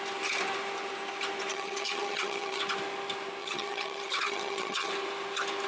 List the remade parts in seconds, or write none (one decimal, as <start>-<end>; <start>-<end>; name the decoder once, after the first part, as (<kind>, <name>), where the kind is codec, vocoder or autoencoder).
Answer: 1.5-2.6 (vocoder, HiFi-GAN); 3.4-4.9